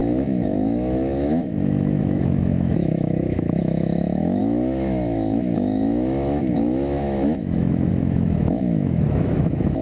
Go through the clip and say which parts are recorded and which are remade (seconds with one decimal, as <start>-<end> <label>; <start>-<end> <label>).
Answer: 0.0-9.8 remade